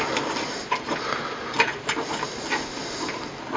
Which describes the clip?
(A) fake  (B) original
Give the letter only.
B